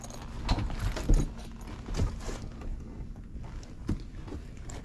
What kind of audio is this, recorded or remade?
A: recorded